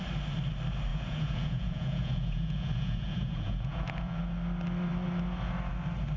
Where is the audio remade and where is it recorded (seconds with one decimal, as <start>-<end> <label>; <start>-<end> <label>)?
0.0-0.9 recorded; 0.9-4.2 remade; 4.2-6.2 recorded